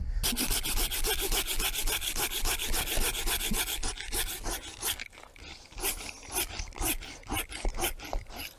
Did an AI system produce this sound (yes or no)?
no